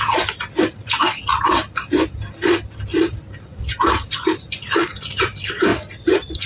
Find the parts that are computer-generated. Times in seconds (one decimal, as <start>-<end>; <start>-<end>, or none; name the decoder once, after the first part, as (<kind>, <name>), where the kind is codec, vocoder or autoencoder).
1.3-5.2 (vocoder, BigVGAN v2); 5.7-6.5